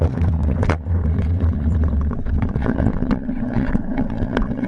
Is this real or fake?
fake